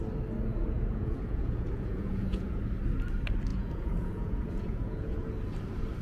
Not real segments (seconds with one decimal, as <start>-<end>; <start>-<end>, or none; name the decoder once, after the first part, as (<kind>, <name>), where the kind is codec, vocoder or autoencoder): 0.5-2.6 (vocoder, Vocos); 3.5-5.3

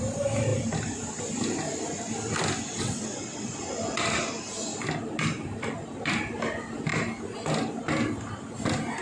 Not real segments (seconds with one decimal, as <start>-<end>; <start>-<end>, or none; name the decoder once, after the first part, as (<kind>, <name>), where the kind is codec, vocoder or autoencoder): 2.7-3.5 (vocoder, WaveNeXt)

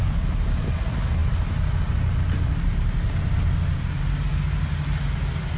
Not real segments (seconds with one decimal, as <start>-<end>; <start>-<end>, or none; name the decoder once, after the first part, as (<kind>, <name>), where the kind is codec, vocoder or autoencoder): none

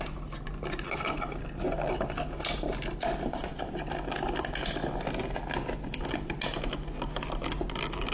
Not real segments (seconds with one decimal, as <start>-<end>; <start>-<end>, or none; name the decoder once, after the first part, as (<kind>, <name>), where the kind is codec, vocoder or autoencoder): none

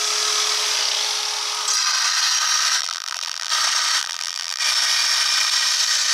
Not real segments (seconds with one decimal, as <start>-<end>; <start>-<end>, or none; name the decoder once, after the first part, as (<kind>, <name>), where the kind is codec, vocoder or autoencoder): 2.8-3.5 (vocoder, BigVGAN v2); 4.0-4.6